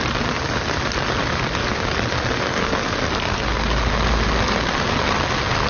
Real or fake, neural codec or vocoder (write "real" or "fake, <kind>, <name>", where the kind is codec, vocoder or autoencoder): real